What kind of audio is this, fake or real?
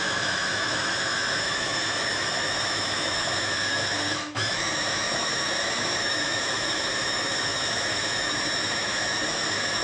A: fake